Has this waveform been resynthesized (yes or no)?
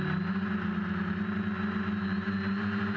no